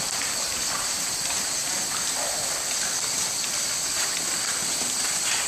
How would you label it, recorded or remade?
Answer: recorded